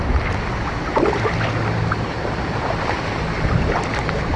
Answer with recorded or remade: recorded